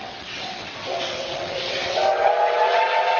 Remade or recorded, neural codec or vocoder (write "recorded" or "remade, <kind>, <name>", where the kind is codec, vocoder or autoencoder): remade, vocoder, WaveNeXt